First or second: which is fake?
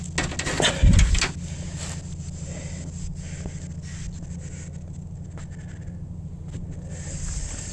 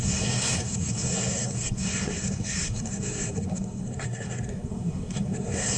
second